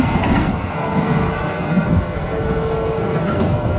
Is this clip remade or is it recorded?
remade